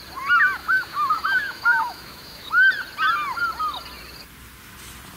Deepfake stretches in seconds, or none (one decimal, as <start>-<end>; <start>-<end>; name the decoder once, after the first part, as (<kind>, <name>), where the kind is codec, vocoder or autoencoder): 0.6-2.5 (autoencoder, DAC-VAE)